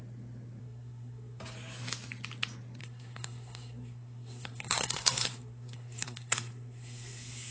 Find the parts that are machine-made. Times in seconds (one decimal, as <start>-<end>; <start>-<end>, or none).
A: 0.6-1.4; 2.8-7.5